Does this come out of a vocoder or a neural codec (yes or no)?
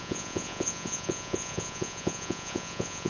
yes